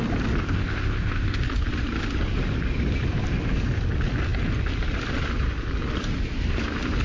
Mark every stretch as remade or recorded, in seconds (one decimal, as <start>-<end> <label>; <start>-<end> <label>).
0.0-0.4 recorded; 0.4-1.4 remade; 1.4-7.0 recorded